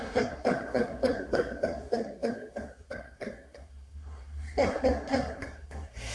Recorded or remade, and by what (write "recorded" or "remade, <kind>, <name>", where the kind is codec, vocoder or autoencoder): remade, codec, SNAC